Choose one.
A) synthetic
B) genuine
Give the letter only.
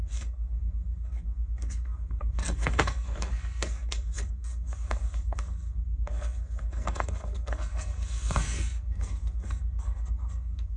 A